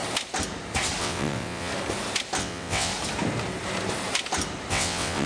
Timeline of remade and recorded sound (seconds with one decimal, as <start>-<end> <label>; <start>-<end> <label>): 0.0-1.0 recorded; 1.0-1.7 remade; 1.7-2.4 recorded; 2.4-2.9 remade; 2.9-4.7 recorded; 4.7-5.3 remade